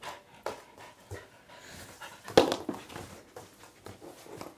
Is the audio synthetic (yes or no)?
no